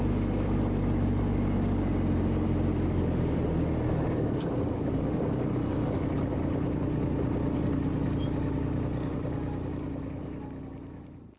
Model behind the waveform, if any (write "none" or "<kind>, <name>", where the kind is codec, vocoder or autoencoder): none